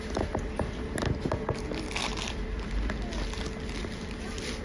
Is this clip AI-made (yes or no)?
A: no